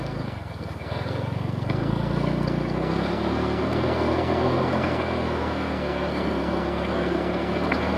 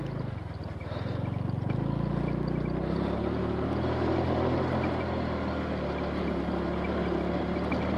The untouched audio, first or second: second